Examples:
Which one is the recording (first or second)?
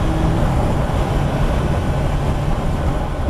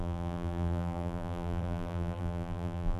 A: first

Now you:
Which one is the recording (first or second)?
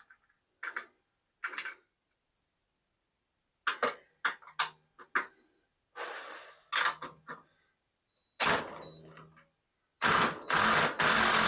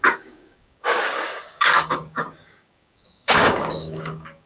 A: first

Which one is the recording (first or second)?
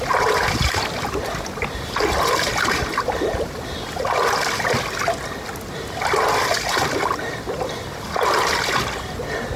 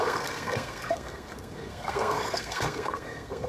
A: first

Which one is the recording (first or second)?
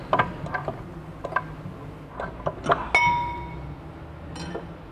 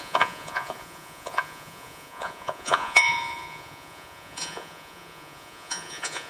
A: first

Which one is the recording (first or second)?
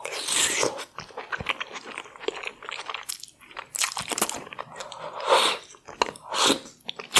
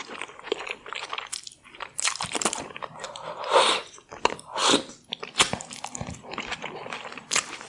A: first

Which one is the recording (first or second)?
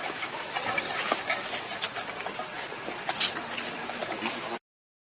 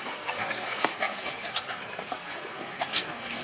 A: first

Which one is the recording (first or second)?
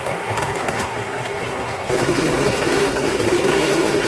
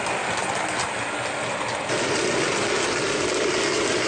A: second